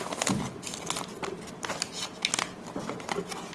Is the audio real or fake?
real